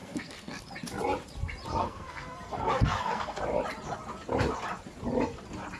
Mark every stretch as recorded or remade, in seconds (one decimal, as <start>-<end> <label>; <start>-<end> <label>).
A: 0.0-0.6 remade; 0.6-1.8 recorded; 1.8-3.4 remade; 3.4-5.8 recorded